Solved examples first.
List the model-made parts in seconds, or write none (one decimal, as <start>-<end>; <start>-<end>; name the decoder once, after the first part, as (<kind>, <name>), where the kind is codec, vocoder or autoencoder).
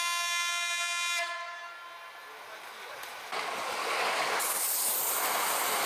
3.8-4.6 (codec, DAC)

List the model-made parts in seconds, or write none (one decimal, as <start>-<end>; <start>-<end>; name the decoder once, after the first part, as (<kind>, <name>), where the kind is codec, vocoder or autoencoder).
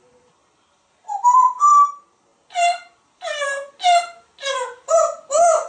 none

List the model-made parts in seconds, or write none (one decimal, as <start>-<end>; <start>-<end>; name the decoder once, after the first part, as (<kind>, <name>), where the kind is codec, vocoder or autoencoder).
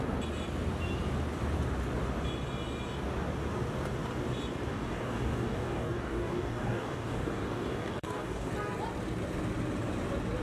4.7-8.5 (codec, DAC)